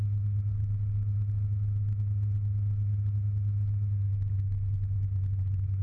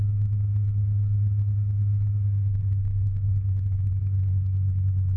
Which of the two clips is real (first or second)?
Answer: first